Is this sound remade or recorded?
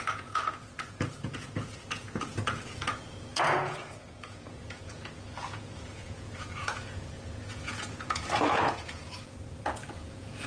remade